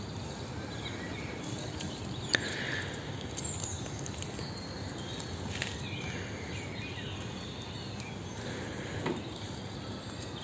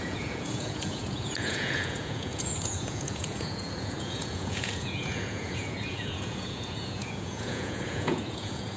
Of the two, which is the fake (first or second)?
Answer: second